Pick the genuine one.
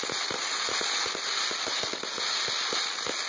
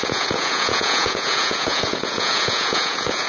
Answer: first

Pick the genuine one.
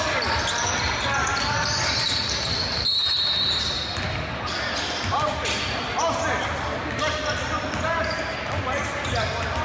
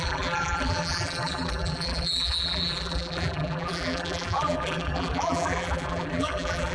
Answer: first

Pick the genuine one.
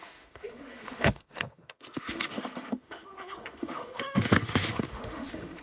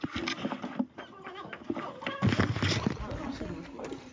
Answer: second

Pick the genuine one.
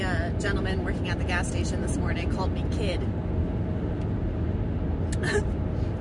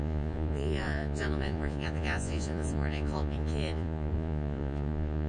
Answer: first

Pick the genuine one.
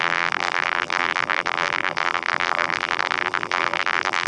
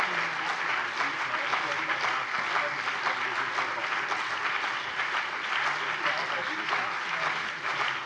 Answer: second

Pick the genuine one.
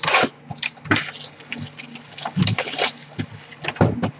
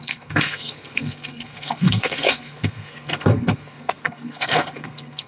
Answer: first